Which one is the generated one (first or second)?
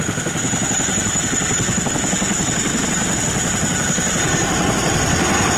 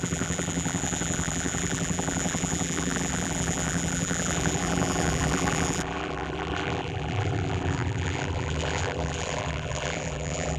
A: second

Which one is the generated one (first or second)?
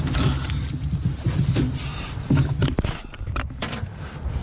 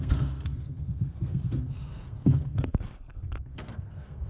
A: second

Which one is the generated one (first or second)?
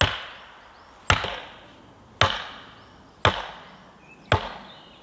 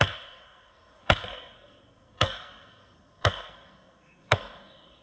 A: second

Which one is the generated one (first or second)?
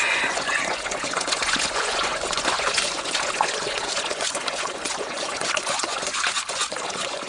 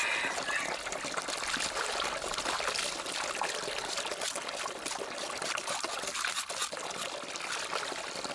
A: first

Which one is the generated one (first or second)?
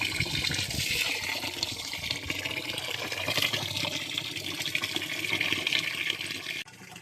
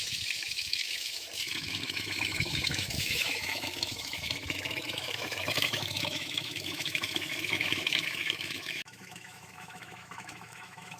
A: second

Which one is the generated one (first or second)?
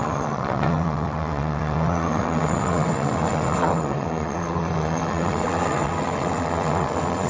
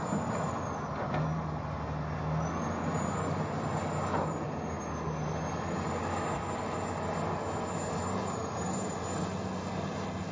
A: first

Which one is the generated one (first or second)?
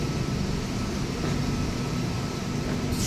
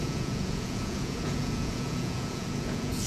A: second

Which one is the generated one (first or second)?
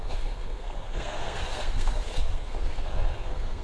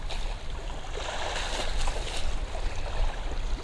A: first